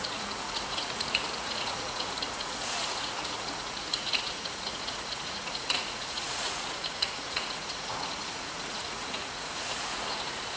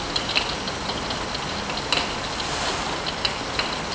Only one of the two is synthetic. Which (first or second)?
first